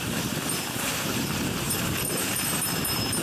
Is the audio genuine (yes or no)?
no